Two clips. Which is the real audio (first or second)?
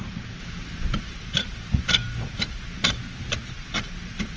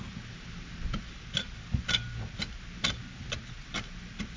second